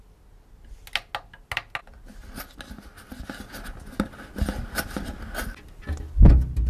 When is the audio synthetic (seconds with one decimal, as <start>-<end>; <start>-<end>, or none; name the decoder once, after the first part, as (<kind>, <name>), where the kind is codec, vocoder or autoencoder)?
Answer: none